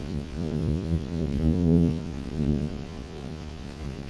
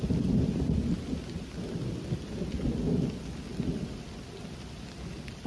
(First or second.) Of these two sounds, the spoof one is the first